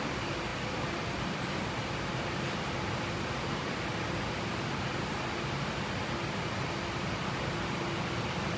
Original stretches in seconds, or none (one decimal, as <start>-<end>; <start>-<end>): 0.0-8.6